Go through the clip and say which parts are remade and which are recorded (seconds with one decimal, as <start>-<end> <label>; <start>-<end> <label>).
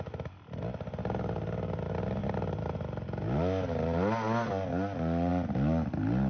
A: 0.0-6.3 recorded